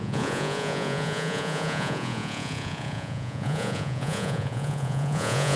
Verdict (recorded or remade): remade